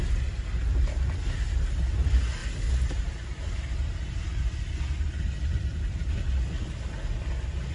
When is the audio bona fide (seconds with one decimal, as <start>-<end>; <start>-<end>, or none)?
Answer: 0.0-7.7